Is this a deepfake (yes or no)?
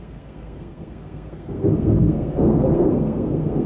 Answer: yes